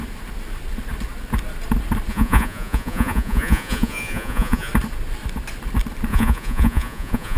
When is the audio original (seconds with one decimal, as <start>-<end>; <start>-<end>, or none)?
0.0-2.1; 4.7-6.1